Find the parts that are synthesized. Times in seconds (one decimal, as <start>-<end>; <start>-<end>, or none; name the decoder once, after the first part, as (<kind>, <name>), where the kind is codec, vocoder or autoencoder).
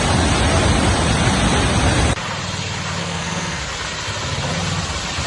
3.0-3.6 (codec, SNAC)